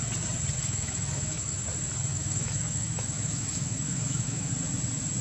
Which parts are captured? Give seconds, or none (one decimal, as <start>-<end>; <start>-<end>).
0.0-0.6; 1.5-2.1; 4.5-5.2